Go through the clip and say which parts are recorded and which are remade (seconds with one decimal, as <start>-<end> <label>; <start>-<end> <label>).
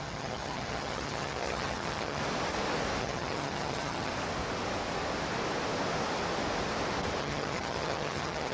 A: 0.0-2.2 remade; 2.2-3.0 recorded; 3.0-4.1 remade; 4.1-7.2 recorded; 7.2-8.5 remade